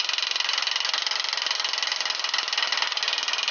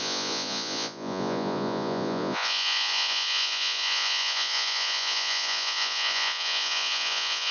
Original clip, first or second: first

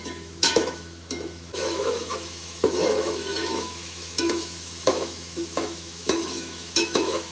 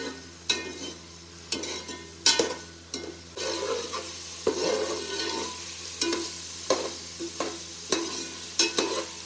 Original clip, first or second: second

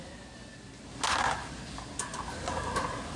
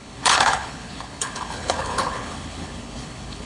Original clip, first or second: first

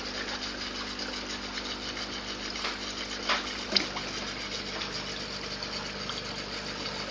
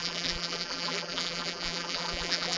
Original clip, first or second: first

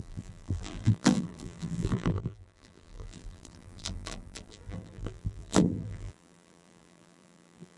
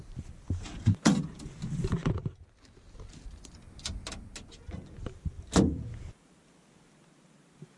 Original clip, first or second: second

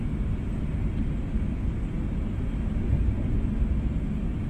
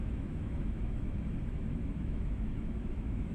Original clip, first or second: first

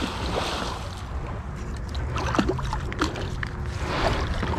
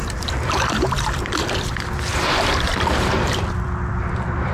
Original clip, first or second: first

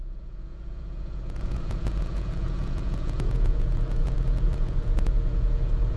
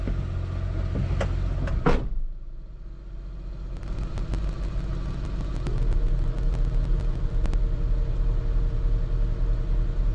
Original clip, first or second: second